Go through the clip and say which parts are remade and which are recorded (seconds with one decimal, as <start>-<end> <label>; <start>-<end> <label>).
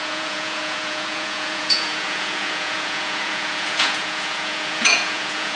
0.0-5.6 remade